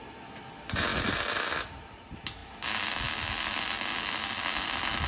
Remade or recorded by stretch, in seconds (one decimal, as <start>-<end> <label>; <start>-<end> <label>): 0.0-5.1 recorded